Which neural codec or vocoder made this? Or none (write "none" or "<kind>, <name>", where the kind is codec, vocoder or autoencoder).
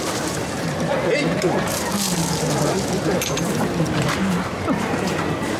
vocoder, BigVGAN v2